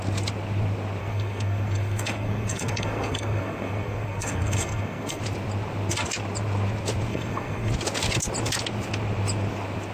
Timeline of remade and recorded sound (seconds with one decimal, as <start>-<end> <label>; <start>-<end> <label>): 0.0-1.0 recorded; 1.0-5.2 remade; 5.2-7.1 recorded; 7.1-7.7 remade; 7.7-9.9 recorded